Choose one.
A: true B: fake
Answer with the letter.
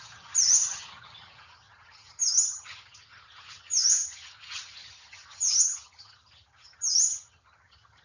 B